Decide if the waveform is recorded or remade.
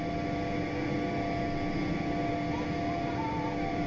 recorded